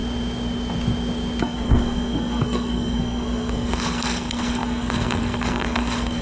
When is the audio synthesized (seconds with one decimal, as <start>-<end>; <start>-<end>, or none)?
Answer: 1.4-6.2